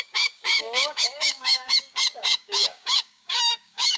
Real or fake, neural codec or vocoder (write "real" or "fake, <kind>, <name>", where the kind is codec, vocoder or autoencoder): fake, codec, DAC